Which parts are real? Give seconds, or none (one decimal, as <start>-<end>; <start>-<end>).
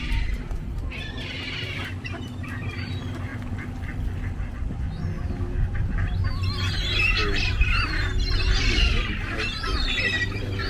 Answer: 0.0-10.7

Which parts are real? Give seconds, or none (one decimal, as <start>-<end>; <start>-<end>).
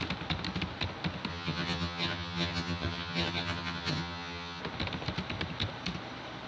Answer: 0.0-1.3; 4.6-6.5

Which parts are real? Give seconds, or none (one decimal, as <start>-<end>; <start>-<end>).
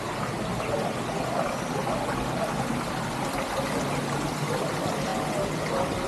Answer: 0.0-6.1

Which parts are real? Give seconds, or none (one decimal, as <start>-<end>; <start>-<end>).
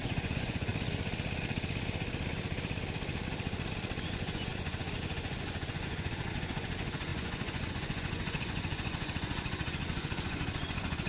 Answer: 0.7-4.0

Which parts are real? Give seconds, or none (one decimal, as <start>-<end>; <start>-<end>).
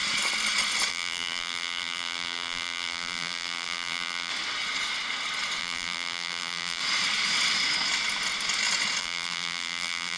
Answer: 0.0-0.9; 4.3-5.6; 6.8-9.0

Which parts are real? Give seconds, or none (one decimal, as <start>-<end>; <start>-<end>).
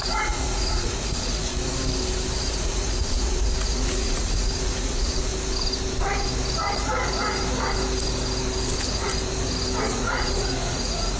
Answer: 1.5-2.6; 5.3-9.8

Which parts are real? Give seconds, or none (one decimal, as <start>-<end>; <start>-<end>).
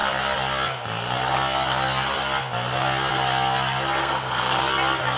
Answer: 0.0-4.0; 4.6-5.2